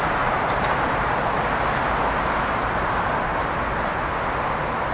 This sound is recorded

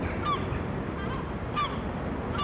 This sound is recorded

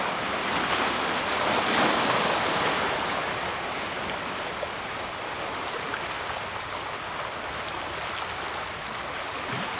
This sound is recorded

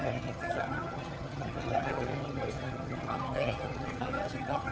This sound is remade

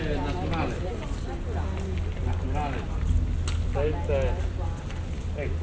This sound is recorded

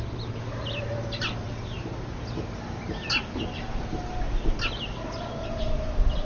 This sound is recorded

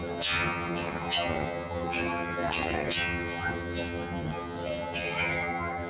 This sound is remade